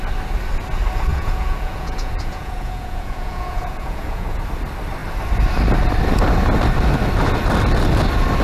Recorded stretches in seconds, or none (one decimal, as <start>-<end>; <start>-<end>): 0.0-1.1; 4.4-8.4